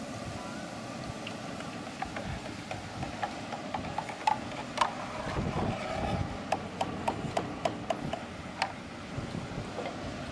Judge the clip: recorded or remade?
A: recorded